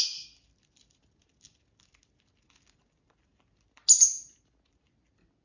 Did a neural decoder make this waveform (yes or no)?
no